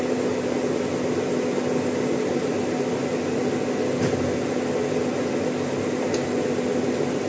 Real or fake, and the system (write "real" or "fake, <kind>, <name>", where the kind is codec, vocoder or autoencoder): real